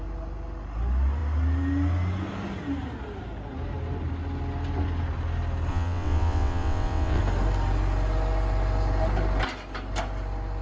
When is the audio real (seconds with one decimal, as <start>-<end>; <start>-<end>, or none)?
0.0-5.7; 7.2-10.6